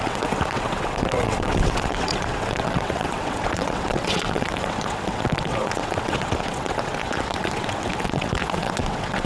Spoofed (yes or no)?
yes